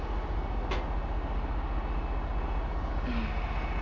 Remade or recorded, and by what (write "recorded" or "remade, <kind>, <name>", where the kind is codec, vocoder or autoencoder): recorded